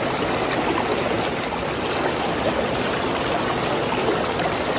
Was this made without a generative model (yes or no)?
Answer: yes